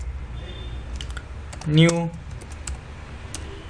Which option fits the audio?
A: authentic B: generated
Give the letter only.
A